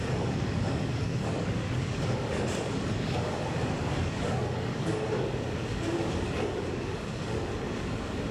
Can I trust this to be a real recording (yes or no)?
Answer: no